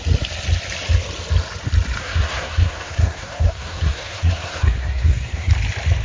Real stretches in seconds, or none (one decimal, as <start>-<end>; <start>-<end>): 0.0-2.0; 5.5-6.0